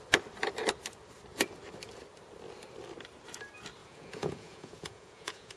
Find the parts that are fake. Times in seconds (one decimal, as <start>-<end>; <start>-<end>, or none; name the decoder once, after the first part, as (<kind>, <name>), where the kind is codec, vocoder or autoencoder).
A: 3.8-5.6 (vocoder, Vocos)